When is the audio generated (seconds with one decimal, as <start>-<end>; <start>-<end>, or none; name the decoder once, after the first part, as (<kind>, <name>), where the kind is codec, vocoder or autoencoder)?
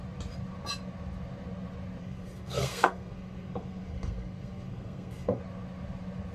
2.0-5.4 (codec, SNAC)